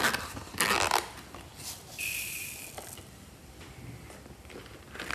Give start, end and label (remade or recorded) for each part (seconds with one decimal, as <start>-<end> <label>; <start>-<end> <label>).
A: 0.0-5.1 recorded